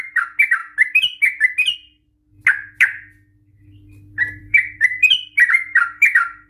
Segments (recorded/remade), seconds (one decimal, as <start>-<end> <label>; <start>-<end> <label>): 0.0-0.6 recorded; 0.6-1.2 remade; 1.2-4.4 recorded; 4.4-6.5 remade